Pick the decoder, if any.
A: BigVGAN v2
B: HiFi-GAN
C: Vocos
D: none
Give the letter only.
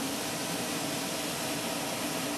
A